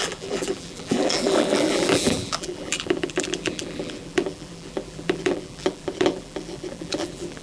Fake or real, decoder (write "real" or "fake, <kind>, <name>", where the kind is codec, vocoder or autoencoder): fake, vocoder, BigVGAN v2